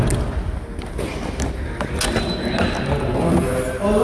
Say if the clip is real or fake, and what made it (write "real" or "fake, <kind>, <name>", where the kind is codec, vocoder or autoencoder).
real